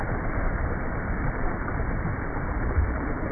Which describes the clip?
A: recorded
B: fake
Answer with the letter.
A